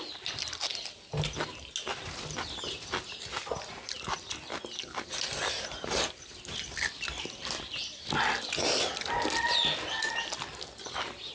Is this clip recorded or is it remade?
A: recorded